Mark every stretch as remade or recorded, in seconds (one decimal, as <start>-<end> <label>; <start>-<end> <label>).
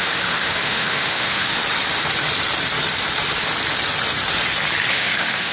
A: 0.0-1.6 remade; 1.6-4.9 recorded; 4.9-5.5 remade